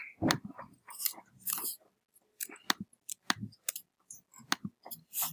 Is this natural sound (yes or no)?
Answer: yes